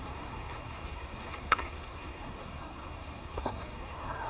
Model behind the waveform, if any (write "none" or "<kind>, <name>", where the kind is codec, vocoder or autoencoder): codec, SNAC